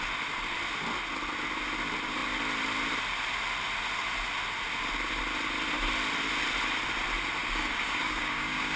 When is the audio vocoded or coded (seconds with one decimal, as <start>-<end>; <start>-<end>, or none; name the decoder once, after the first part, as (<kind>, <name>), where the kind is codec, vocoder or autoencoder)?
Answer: 7.4-8.8 (codec, DAC)